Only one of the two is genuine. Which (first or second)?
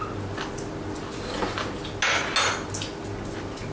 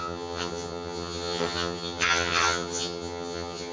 first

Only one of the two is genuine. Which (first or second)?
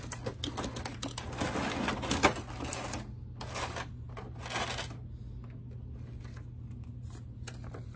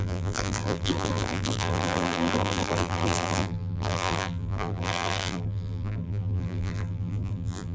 first